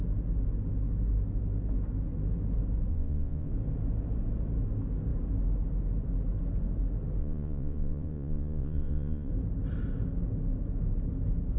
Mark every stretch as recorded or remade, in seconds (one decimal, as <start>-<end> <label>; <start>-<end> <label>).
0.0-2.9 recorded; 2.9-3.5 remade; 3.5-7.2 recorded; 7.2-9.3 remade; 9.3-11.6 recorded